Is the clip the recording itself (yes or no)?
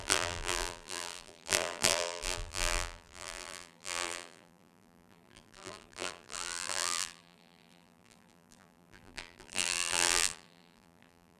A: no